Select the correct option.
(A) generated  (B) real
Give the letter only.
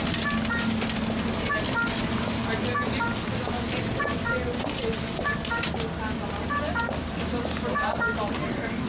B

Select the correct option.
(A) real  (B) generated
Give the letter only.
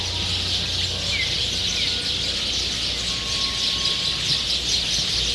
A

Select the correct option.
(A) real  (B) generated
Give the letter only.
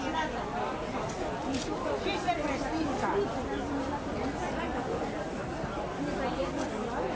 A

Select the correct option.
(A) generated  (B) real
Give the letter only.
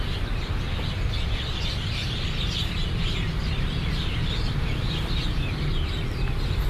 B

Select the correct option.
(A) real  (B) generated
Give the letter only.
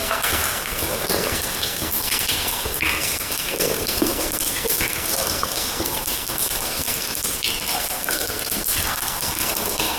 B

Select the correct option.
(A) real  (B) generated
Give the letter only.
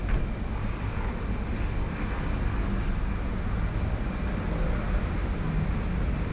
A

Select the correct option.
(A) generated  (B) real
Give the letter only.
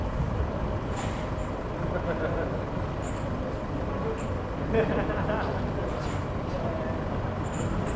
B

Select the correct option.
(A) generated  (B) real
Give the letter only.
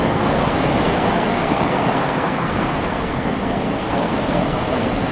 A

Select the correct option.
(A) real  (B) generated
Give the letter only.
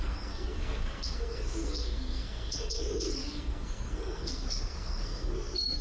B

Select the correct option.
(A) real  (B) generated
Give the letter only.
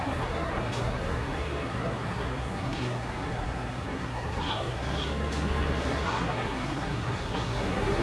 B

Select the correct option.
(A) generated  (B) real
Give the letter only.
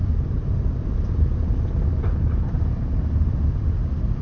B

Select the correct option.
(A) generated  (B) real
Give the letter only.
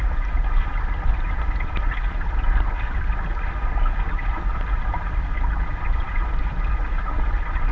B